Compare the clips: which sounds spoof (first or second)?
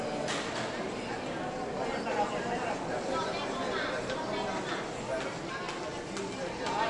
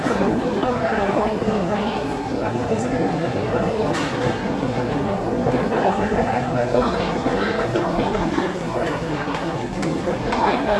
second